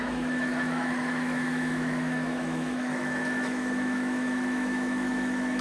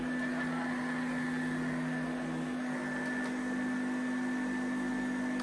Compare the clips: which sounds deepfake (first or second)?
first